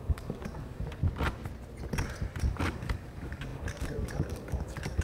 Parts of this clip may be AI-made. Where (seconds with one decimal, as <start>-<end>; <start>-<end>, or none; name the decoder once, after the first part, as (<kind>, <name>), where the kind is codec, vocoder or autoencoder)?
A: 0.0-1.0 (codec, DAC); 2.4-5.0